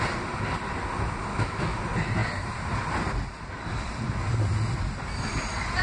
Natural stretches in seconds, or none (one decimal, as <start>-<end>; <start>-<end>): 0.0-1.3; 1.8-5.8